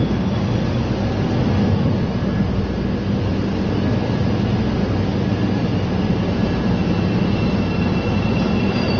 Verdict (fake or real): real